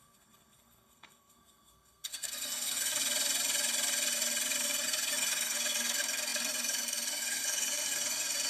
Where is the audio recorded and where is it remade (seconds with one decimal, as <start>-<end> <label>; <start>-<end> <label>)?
0.0-3.0 remade; 3.0-4.6 recorded; 4.6-8.5 remade